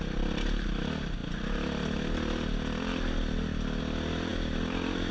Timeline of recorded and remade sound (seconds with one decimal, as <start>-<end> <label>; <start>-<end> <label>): 0.0-5.1 recorded